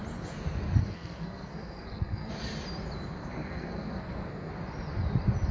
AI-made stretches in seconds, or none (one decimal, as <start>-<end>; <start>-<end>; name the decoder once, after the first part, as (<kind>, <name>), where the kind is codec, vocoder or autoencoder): 0.8-2.3 (codec, SNAC); 3.2-4.5